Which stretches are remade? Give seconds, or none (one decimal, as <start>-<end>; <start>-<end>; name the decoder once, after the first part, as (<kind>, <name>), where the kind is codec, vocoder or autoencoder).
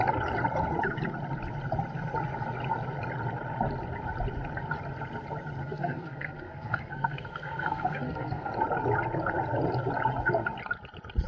5.6-8.5 (codec, SNAC)